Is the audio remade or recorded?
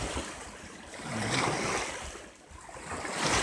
recorded